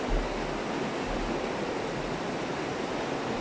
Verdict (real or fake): real